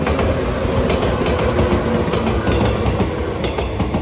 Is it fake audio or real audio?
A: real